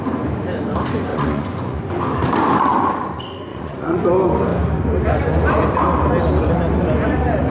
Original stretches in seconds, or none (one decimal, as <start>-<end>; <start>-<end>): 0.0-1.1; 1.8-3.5; 4.1-7.5